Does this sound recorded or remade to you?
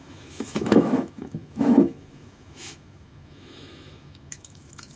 remade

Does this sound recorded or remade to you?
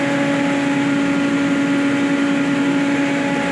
recorded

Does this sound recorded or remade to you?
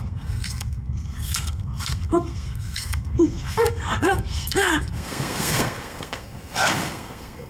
remade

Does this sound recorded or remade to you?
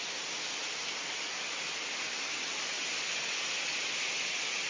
recorded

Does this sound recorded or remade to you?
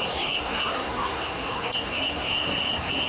remade